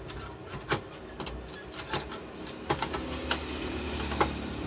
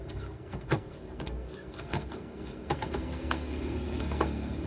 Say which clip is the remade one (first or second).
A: second